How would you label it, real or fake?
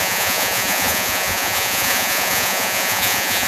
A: fake